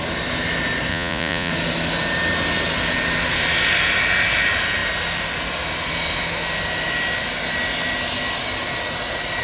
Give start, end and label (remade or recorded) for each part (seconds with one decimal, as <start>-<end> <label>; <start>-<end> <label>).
0.0-0.9 recorded; 0.9-1.5 remade; 1.5-9.4 recorded

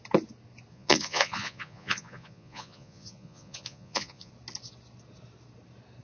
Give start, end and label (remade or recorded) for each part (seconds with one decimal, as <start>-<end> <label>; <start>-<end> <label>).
0.0-0.7 recorded; 0.7-4.3 remade; 4.3-6.0 recorded